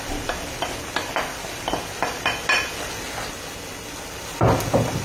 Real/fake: real